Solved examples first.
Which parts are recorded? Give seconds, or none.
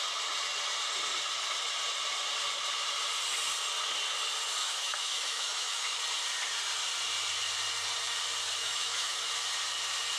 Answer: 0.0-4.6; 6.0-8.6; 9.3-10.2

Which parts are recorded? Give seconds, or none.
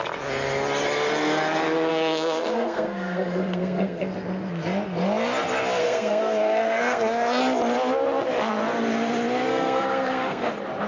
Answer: 0.0-1.9; 4.1-5.8; 7.4-9.5; 10.5-10.9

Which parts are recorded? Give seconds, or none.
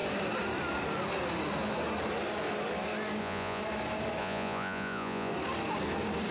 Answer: 0.0-3.2; 3.6-4.2; 5.3-6.3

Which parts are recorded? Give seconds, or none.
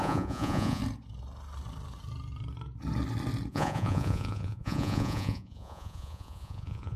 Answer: 0.8-3.5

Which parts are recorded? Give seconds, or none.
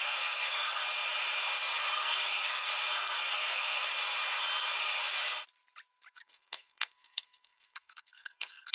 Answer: 0.8-1.9; 2.7-3.3; 3.9-6.1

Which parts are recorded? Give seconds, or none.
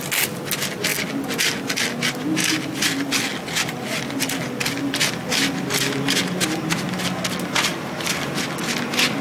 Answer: 0.0-9.2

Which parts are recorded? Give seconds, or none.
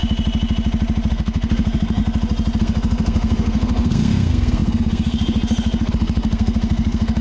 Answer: 0.0-1.1; 2.0-2.6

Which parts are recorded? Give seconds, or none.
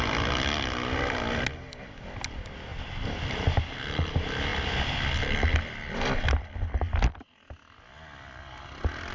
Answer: 0.0-9.1